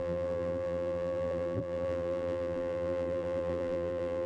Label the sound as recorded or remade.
remade